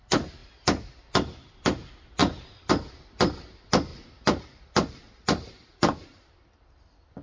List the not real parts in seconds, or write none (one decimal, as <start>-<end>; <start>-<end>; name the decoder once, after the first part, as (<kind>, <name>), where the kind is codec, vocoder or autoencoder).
0.0-3.9 (vocoder, BigVGAN v2); 4.4-7.2